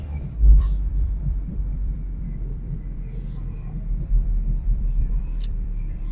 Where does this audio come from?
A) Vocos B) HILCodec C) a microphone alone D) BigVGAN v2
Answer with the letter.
D